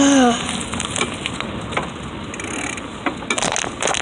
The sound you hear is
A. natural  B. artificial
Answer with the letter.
A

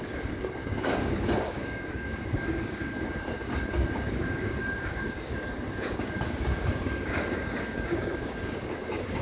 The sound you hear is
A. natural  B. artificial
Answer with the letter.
B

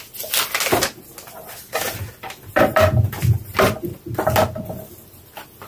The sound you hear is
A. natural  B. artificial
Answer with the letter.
A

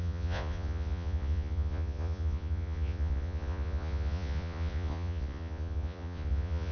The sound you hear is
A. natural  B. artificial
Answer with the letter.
B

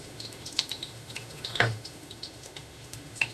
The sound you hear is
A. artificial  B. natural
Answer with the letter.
A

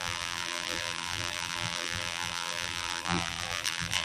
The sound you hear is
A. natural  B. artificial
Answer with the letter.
B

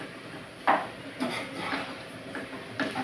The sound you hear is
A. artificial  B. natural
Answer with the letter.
B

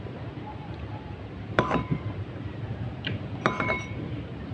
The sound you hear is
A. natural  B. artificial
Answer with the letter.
B